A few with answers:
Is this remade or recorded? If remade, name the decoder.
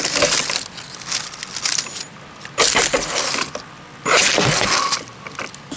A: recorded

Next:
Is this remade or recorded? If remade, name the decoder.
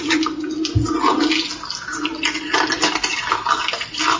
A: recorded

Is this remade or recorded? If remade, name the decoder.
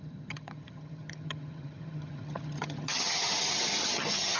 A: remade, vocoder, HiFi-GAN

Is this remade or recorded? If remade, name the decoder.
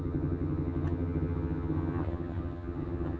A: remade, vocoder, HiFi-GAN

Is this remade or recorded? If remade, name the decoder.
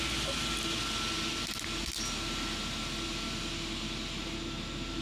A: recorded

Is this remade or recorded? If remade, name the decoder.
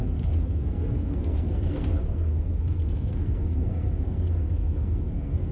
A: remade, codec, SNAC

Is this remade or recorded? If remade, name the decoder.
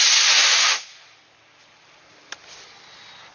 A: recorded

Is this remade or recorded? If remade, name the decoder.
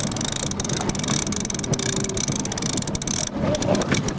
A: recorded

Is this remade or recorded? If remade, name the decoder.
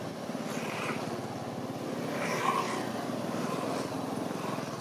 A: recorded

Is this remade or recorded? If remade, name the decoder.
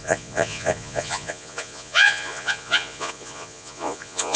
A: remade, vocoder, Vocos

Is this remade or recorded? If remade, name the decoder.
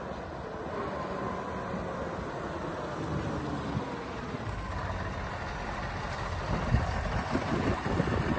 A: recorded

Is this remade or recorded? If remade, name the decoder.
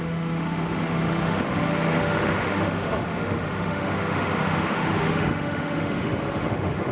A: remade, autoencoder, DAC-VAE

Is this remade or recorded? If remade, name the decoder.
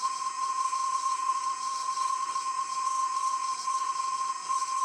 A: remade, codec, SNAC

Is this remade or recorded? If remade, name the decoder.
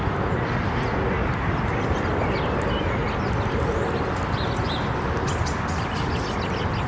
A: recorded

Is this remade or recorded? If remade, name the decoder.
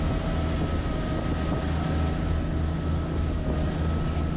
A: recorded